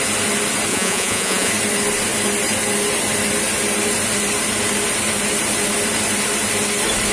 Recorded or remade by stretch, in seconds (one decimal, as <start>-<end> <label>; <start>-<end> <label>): 0.0-0.7 recorded; 0.7-1.5 remade; 1.5-7.1 recorded